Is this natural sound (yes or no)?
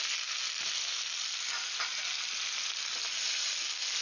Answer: yes